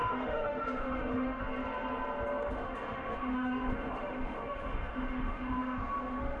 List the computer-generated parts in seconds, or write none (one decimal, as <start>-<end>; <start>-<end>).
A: 0.0-1.4; 2.4-6.4